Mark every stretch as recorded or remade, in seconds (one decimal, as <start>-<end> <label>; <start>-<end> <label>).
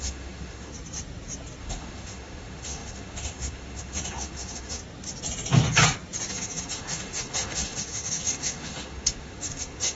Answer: 0.0-0.7 remade; 0.7-1.6 recorded; 1.6-4.8 remade; 4.8-6.3 recorded; 6.3-10.0 remade